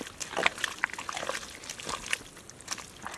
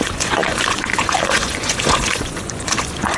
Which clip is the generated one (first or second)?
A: second